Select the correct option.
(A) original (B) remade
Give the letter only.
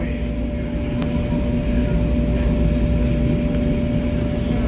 A